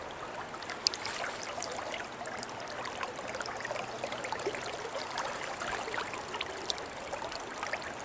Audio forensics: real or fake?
real